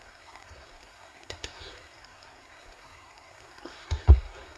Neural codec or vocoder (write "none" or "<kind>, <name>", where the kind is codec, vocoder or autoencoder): codec, SNAC